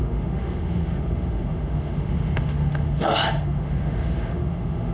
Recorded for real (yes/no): no